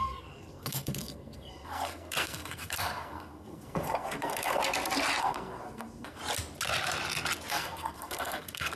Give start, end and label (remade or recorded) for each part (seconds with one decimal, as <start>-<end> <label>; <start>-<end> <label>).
0.0-4.6 remade; 4.6-5.2 recorded; 5.2-6.2 remade; 6.2-7.5 recorded; 7.5-8.8 remade